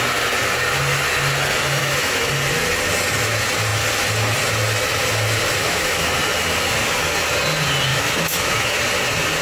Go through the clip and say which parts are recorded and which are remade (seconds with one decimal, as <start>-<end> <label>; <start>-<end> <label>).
0.0-1.8 recorded; 1.8-2.3 remade; 2.3-5.6 recorded; 5.6-6.1 remade; 6.1-7.9 recorded; 7.9-8.8 remade; 8.8-9.4 recorded